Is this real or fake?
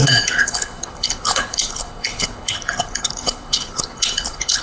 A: fake